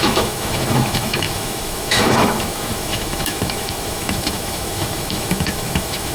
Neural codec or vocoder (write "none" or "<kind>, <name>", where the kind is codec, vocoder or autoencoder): autoencoder, DAC-VAE